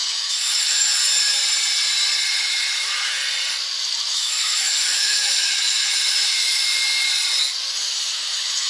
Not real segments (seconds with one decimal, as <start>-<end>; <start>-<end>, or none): 0.0-1.0; 2.4-3.2; 4.1-6.8; 7.7-8.7